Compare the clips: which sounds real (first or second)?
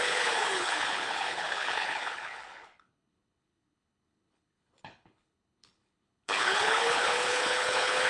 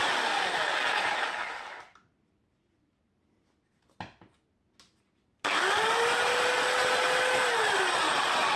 second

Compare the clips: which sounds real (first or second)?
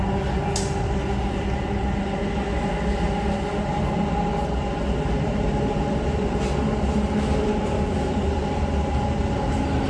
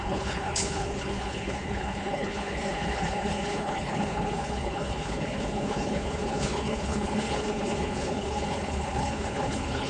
first